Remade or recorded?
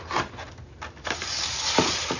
recorded